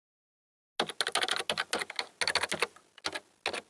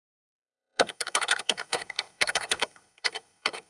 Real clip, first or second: first